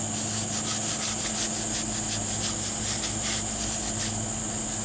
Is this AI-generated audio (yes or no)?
no